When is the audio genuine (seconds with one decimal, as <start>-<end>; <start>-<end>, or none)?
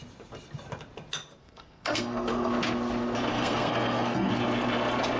0.0-1.4; 2.5-3.3; 4.3-5.2